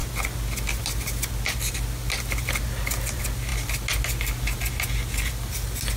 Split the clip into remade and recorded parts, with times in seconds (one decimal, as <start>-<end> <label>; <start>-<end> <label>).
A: 0.0-6.0 recorded